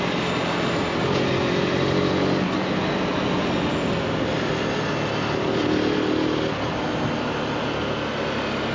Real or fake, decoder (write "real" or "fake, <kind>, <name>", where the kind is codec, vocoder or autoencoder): real